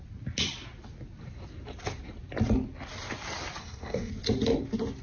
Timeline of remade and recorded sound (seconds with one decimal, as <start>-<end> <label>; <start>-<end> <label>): 0.0-3.6 recorded; 3.6-4.1 remade; 4.1-5.0 recorded